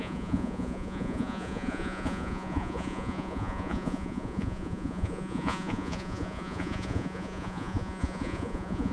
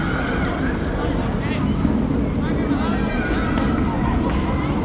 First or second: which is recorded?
second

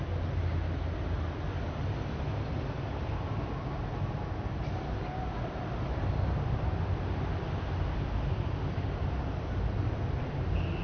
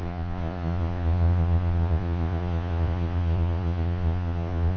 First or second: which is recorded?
first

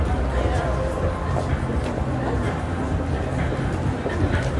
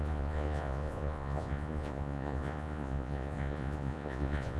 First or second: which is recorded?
first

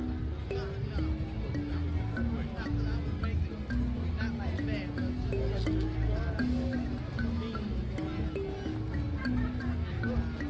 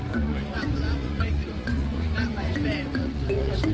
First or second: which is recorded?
first